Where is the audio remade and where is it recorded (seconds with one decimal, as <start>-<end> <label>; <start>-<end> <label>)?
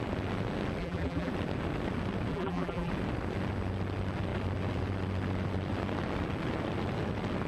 0.0-0.8 recorded; 0.8-1.3 remade; 1.3-2.3 recorded; 2.3-2.9 remade; 2.9-7.5 recorded